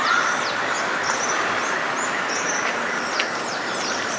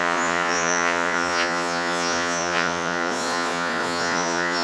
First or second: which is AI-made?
second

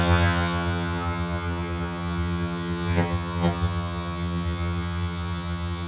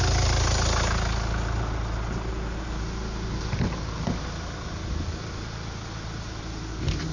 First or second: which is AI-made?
first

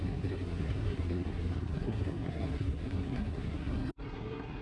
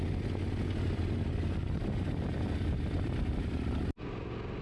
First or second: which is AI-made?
first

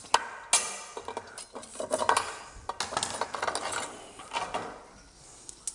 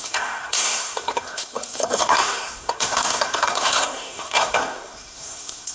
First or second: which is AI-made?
second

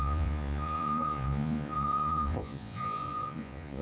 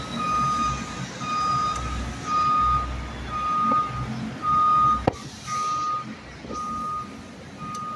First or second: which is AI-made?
first